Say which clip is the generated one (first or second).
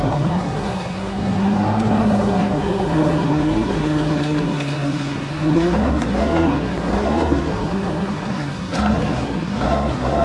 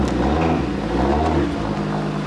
first